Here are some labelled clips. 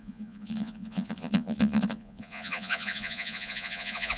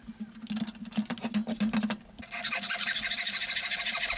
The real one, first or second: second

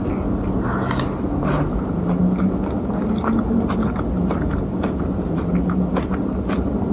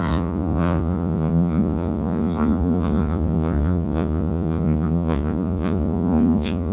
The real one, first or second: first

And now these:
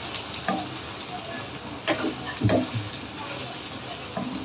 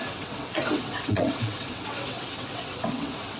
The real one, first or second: first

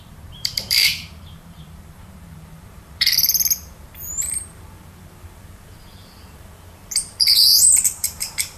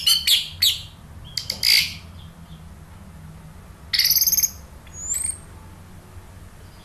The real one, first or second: second